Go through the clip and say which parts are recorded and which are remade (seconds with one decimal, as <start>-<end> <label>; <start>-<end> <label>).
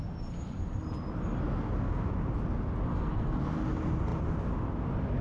0.0-2.9 recorded; 2.9-3.4 remade; 3.4-5.2 recorded